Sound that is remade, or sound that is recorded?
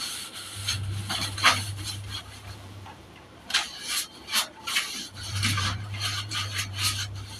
remade